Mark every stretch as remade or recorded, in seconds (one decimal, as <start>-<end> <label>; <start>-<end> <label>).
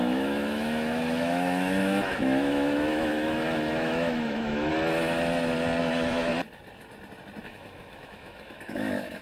0.0-4.7 remade; 4.7-5.8 recorded; 5.8-6.3 remade; 6.3-7.4 recorded; 7.4-9.2 remade